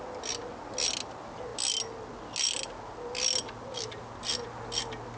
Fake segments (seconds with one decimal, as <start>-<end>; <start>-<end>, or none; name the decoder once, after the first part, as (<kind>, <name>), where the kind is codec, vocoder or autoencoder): none